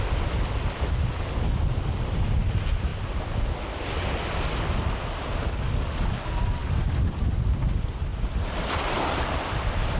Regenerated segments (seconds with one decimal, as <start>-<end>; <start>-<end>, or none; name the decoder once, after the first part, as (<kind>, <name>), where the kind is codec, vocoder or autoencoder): none